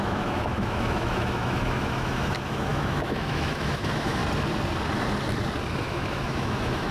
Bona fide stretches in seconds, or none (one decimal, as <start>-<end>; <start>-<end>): 4.2-5.8